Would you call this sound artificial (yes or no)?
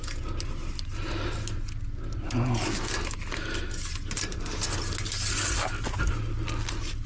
no